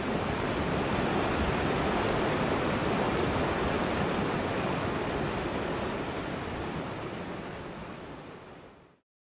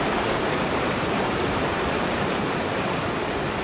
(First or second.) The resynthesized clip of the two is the second